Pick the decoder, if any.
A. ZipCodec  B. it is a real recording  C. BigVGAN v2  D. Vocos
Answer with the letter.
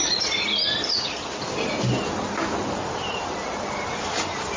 B